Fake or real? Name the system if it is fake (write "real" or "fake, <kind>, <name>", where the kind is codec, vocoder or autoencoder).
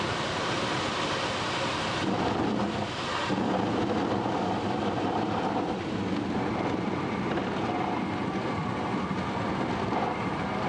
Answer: real